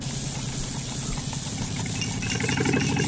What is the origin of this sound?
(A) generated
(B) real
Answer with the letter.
B